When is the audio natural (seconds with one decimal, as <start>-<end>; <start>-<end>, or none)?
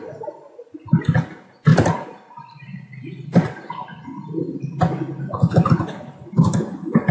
0.0-1.7; 4.0-7.1